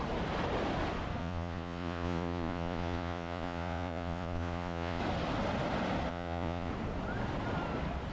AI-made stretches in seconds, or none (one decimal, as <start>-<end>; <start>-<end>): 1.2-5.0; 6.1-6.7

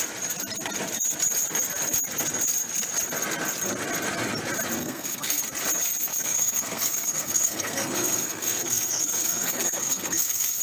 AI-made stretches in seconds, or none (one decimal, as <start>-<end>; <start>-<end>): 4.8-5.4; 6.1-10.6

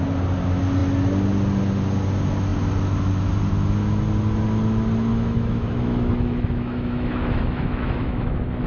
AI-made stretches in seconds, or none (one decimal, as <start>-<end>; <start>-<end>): 5.1-8.7